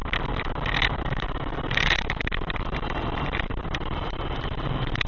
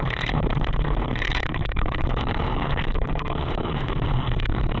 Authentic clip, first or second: first